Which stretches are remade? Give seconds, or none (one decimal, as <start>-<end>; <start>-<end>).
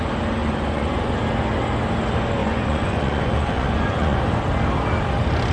0.4-1.2; 2.4-4.2